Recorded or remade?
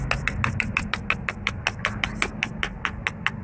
recorded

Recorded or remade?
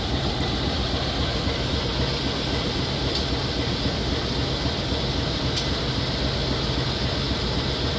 recorded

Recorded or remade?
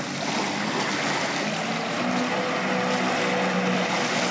recorded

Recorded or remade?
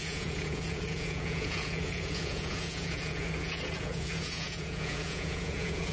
remade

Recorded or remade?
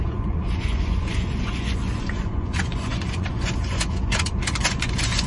remade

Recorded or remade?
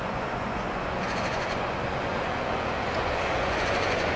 remade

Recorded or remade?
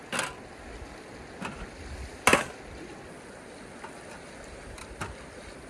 recorded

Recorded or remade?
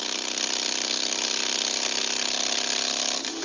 recorded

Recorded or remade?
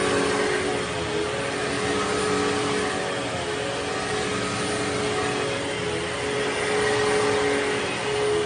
recorded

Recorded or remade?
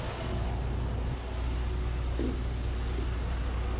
recorded